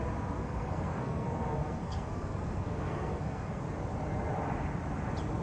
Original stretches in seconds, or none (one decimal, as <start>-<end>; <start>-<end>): 0.0-0.4; 3.6-5.4